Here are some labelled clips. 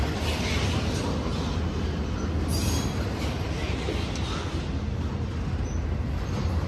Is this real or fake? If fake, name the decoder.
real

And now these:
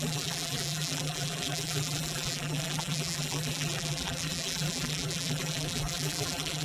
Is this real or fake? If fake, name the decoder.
fake, vocoder, BigVGAN v2